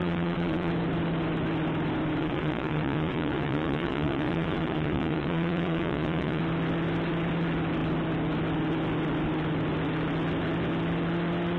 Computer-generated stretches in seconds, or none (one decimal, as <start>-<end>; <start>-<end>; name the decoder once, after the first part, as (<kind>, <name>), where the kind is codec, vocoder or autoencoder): 0.0-0.7 (vocoder, Vocos); 2.2-6.4